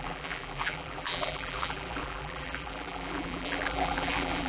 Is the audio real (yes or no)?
no